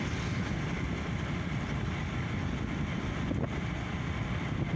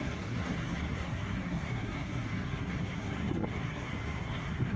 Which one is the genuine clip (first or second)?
first